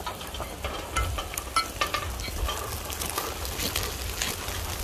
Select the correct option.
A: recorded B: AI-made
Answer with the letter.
A